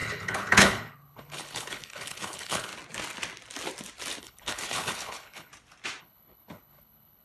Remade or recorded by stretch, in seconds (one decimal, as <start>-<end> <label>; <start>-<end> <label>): 0.0-2.7 remade; 2.7-4.2 recorded; 4.2-5.5 remade; 5.5-6.0 recorded; 6.0-7.2 remade